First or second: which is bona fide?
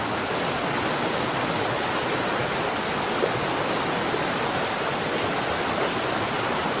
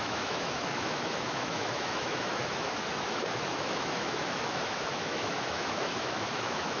first